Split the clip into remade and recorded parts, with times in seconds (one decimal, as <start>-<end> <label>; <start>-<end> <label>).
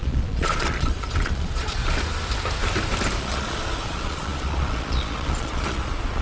0.0-1.8 remade; 1.8-3.2 recorded; 3.2-6.2 remade